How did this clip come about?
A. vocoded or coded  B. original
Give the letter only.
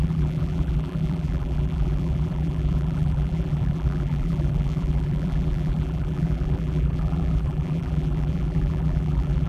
A